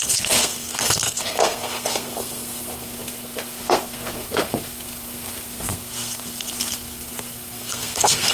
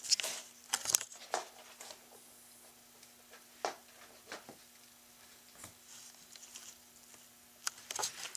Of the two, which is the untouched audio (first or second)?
second